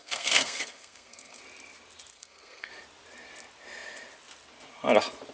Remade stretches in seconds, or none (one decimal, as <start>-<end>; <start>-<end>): 0.0-1.4; 2.1-2.7